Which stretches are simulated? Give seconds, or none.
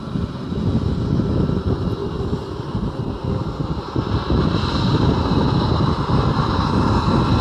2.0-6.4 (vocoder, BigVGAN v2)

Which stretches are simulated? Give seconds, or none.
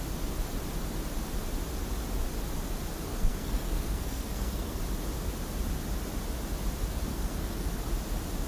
3.1-4.8 (codec, SNAC); 7.1-7.7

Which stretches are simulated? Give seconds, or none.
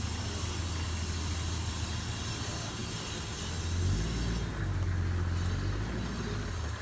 none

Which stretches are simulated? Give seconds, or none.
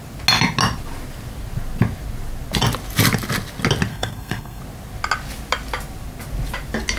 3.9-4.6 (codec, SNAC)